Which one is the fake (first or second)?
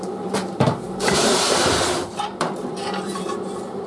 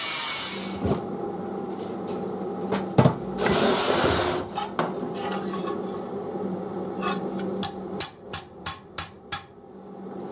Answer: first